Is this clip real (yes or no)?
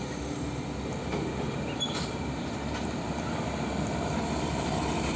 yes